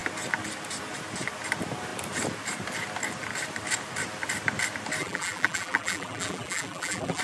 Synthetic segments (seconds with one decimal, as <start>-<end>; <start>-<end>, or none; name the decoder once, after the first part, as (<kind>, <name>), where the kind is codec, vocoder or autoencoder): 5.0-7.2 (vocoder, BigVGAN v2)